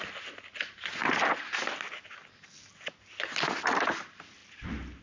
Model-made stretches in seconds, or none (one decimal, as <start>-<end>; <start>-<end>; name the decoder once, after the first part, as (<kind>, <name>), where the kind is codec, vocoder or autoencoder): none